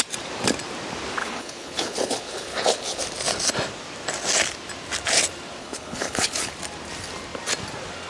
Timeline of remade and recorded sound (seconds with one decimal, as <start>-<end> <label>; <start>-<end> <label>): 0.0-1.2 recorded; 1.2-3.0 remade; 3.0-5.6 recorded; 5.6-6.5 remade; 6.5-8.1 recorded

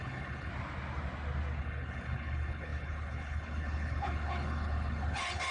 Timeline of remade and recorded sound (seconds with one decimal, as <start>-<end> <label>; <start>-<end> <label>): 0.0-0.5 remade; 0.5-1.6 recorded; 1.6-5.5 remade

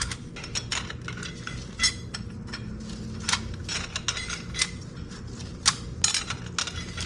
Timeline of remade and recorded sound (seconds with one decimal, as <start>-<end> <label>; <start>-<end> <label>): 0.0-7.1 recorded

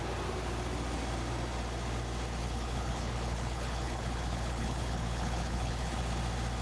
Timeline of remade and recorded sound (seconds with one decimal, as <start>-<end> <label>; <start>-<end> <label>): 0.0-2.4 recorded; 2.4-6.0 remade; 6.0-6.6 recorded

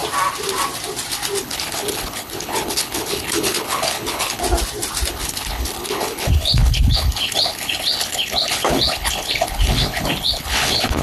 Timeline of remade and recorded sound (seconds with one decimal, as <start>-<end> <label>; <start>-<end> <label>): 0.0-1.4 recorded; 1.4-4.4 remade; 4.4-5.1 recorded; 5.1-11.0 remade

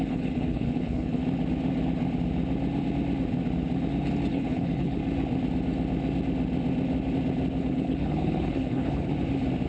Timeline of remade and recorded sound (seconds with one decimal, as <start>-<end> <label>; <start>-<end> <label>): 0.0-1.2 remade; 1.2-4.3 recorded; 4.3-5.0 remade; 5.0-7.6 recorded; 7.6-9.1 remade; 9.1-9.7 recorded

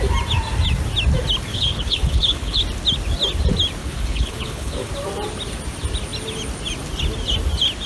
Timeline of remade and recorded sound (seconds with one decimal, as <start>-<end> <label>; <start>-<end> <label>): 0.0-1.5 recorded; 1.5-2.6 remade; 2.6-3.8 recorded; 3.8-4.9 remade; 4.9-7.9 recorded

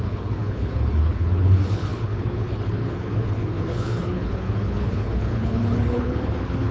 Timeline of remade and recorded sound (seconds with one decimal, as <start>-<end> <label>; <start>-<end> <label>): 0.0-6.7 remade